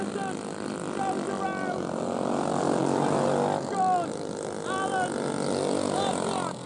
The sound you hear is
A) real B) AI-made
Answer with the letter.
A